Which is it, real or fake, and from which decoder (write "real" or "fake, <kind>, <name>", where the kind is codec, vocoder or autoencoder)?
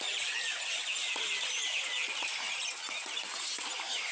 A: real